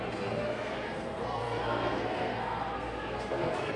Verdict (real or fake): fake